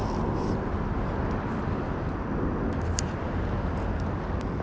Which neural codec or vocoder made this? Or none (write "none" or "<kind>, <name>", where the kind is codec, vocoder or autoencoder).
none